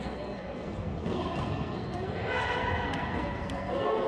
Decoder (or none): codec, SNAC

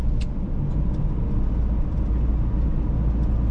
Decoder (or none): none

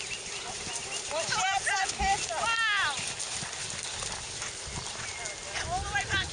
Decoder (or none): none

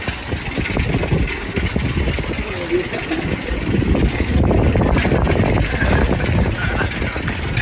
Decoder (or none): none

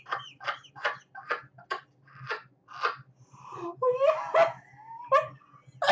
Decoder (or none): none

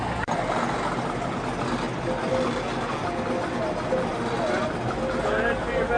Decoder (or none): none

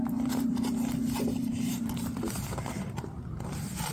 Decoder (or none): vocoder, BigVGAN v2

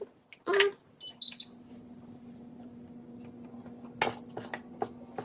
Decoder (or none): none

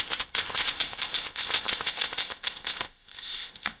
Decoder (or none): codec, ZipCodec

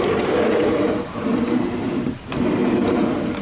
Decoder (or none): vocoder, BigVGAN v2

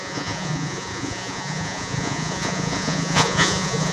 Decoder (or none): vocoder, Vocos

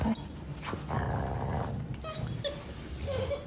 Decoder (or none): none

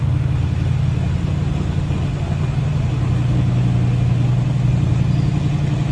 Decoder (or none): none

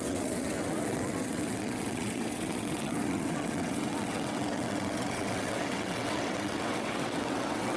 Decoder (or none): vocoder, WaveNeXt